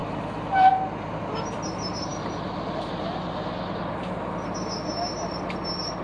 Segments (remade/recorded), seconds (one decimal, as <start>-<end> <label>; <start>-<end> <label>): 0.0-6.0 recorded